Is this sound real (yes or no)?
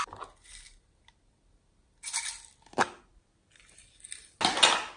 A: yes